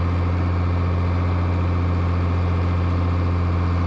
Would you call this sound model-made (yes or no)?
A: no